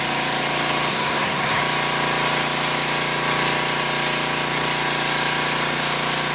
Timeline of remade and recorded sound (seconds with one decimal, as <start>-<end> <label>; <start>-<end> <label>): 0.0-0.9 recorded; 0.9-1.6 remade; 1.6-6.3 recorded